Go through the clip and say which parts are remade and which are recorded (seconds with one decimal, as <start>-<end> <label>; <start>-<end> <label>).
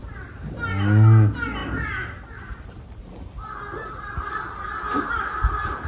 0.0-5.9 recorded